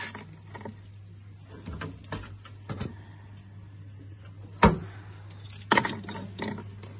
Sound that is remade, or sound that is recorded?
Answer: recorded